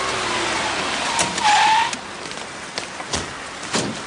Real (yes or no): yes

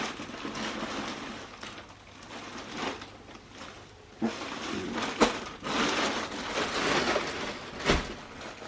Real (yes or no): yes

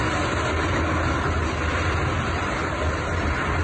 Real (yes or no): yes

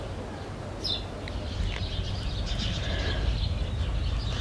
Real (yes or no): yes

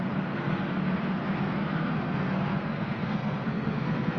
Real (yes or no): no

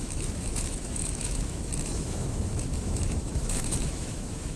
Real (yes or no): no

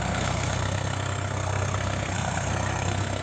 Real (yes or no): no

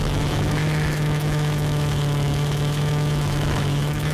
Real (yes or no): no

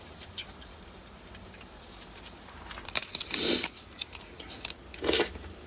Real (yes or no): no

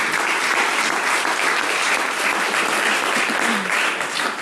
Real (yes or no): yes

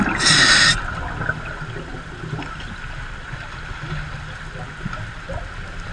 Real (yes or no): yes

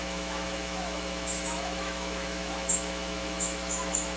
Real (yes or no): no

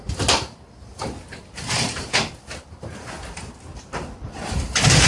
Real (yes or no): yes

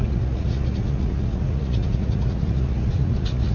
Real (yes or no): no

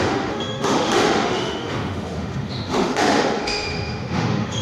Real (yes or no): no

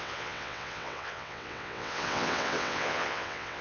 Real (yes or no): no